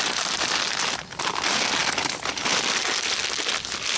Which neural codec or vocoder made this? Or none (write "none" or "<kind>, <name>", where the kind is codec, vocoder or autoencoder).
none